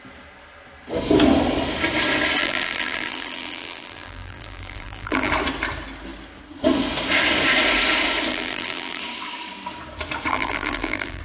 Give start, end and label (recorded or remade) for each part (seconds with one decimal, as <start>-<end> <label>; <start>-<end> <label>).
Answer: 0.0-2.4 recorded; 2.4-5.3 remade; 5.3-8.3 recorded; 8.3-9.0 remade; 9.0-10.3 recorded; 10.3-11.2 remade